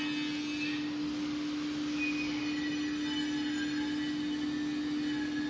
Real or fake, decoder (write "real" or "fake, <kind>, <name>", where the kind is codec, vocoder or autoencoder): real